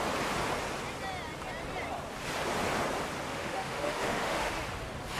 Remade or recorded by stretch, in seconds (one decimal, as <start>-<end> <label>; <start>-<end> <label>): 0.0-3.3 recorded; 3.3-4.5 remade; 4.5-5.2 recorded